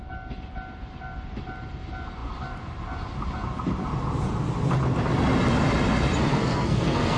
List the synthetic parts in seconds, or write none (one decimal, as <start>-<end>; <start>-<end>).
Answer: 6.3-7.2